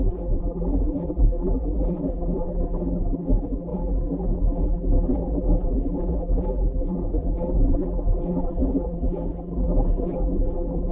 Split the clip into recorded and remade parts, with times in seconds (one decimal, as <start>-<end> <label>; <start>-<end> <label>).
0.0-10.9 remade